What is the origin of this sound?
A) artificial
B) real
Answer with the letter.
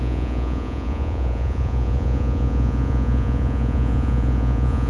A